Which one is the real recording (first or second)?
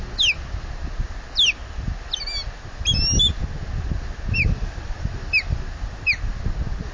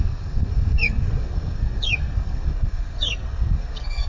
first